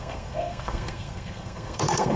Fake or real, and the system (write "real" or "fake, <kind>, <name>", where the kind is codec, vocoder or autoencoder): fake, codec, SNAC